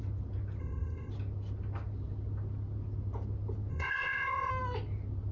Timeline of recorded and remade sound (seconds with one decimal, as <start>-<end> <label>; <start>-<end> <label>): 0.0-0.6 recorded; 0.6-1.1 remade; 1.1-3.7 recorded; 3.7-4.5 remade; 4.5-5.3 recorded